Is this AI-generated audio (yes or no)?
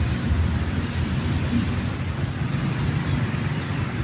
no